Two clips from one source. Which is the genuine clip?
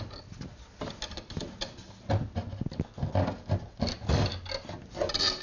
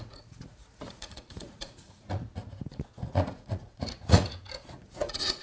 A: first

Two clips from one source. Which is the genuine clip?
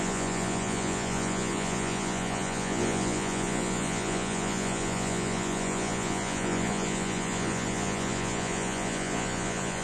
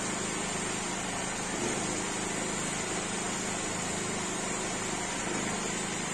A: second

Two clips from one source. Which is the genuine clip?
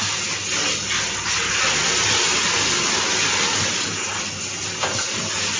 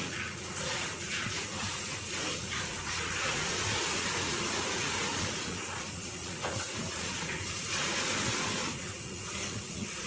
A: first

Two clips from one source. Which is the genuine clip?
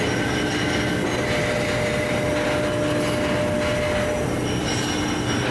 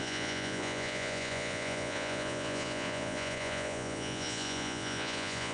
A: first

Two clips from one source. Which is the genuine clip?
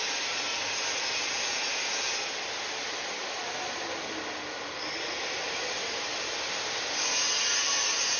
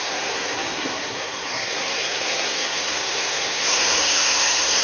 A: first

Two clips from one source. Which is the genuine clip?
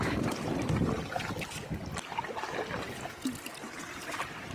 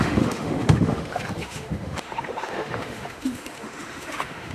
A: first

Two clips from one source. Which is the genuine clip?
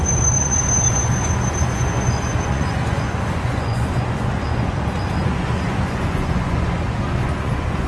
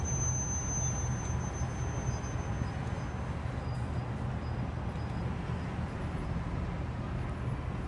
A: second